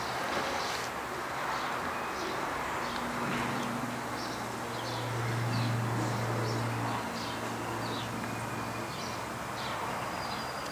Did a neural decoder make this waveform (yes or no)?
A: no